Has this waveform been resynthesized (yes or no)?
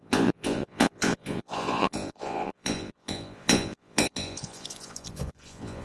yes